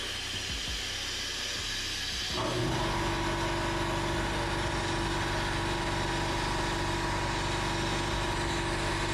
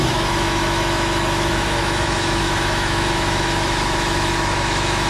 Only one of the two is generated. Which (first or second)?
second